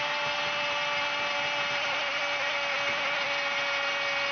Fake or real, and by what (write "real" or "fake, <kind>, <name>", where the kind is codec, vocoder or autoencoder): real